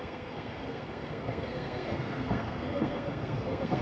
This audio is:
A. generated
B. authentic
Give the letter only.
A